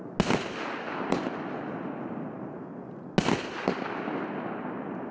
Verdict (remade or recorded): recorded